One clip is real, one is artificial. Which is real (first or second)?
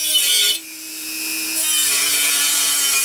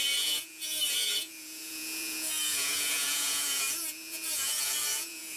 first